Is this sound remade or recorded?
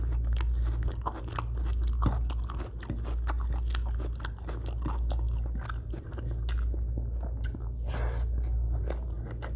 recorded